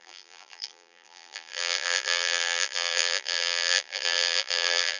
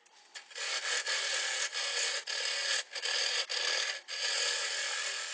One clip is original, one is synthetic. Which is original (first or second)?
second